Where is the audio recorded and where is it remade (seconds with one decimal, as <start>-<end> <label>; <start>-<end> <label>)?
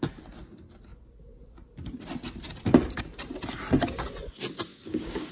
0.0-4.7 recorded; 4.7-5.3 remade